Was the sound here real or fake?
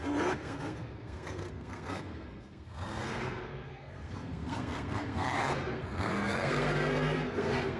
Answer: fake